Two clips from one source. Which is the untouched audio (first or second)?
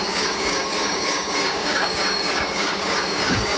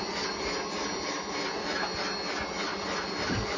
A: second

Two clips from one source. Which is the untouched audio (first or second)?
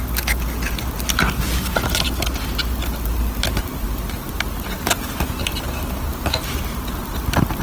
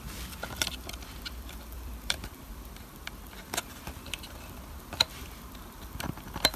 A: first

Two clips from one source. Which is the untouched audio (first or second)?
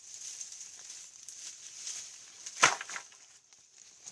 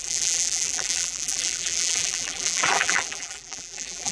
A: first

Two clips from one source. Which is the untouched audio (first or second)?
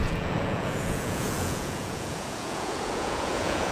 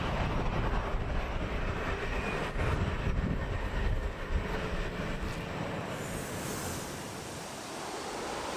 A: second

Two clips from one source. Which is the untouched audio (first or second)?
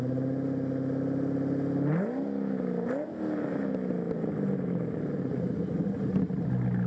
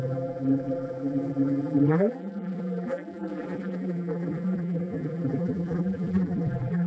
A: first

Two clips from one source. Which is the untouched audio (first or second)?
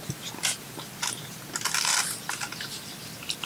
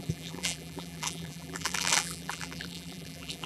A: first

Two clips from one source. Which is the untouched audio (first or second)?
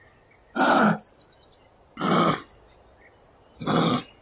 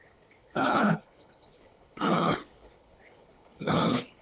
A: first